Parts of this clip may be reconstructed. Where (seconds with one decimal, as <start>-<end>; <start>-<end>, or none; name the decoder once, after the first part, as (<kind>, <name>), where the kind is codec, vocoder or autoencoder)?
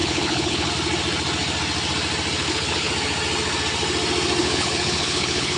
0.0-0.7 (codec, HILCodec); 2.4-2.9; 4.4-5.6